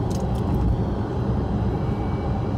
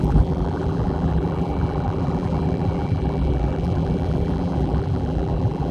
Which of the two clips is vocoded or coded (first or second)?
second